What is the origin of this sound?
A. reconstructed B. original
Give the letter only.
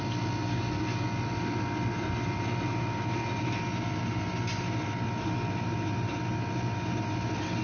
B